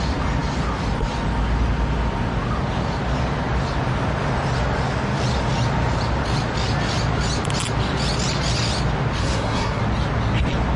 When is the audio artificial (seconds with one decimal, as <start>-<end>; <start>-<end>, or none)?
9.2-9.8